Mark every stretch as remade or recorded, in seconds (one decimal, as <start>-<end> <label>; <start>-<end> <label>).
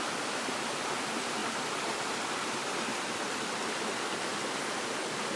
0.0-1.4 recorded; 1.4-2.5 remade; 2.5-2.9 recorded; 2.9-3.5 remade; 3.5-5.4 recorded